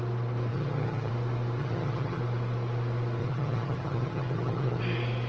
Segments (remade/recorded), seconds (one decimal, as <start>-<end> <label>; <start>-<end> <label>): 0.0-0.5 recorded; 0.5-1.1 remade; 1.1-1.6 recorded; 1.6-2.2 remade; 2.2-3.2 recorded; 3.2-4.8 remade; 4.8-5.3 recorded